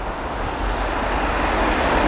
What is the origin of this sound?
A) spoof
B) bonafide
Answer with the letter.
B